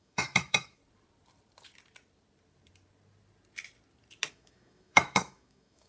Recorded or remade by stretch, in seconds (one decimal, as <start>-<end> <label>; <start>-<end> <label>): 0.0-0.8 remade; 0.8-4.3 recorded; 4.3-5.9 remade